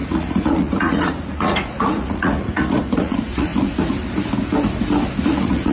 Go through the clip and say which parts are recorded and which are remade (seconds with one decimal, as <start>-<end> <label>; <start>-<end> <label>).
0.0-3.5 remade; 3.5-5.2 recorded; 5.2-5.7 remade